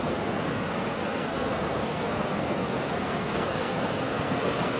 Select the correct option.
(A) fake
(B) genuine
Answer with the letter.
A